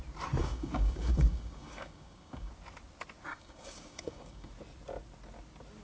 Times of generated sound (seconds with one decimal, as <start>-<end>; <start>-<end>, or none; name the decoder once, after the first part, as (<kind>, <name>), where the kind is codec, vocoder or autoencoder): 0.4-2.5 (codec, DAC); 3.3-4.5